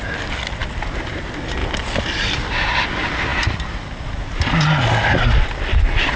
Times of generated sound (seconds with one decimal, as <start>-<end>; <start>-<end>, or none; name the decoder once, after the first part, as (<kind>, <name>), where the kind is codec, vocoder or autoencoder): none